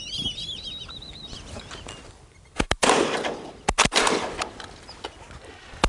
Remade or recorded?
recorded